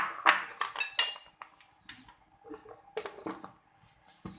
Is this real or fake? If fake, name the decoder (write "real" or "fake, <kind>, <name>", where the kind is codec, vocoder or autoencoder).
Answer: real